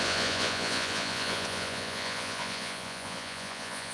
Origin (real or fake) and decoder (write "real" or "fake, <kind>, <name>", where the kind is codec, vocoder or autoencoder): fake, vocoder, Vocos